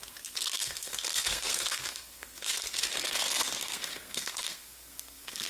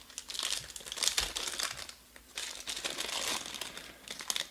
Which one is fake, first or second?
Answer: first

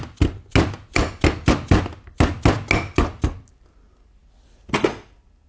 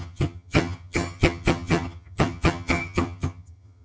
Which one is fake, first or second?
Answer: second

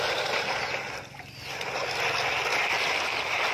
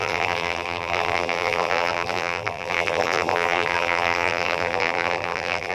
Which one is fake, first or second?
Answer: second